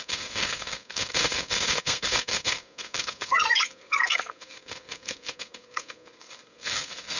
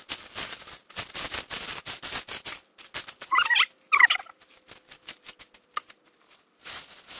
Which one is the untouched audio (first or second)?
second